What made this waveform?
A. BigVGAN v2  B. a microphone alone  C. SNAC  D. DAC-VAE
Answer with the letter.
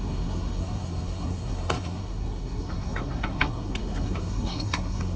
C